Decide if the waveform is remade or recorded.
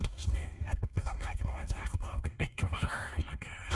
remade